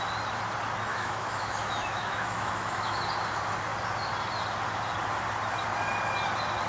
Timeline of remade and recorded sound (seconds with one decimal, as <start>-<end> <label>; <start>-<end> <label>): 0.0-0.9 recorded; 0.9-3.0 remade; 3.0-6.7 recorded